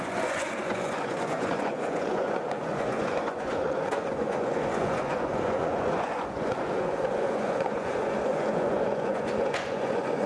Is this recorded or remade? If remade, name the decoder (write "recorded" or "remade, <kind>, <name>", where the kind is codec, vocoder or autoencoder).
remade, vocoder, Vocos